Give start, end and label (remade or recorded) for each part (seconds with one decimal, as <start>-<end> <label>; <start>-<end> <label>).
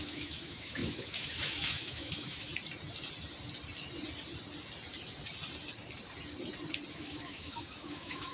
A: 0.0-2.5 remade; 2.5-6.9 recorded; 6.9-8.3 remade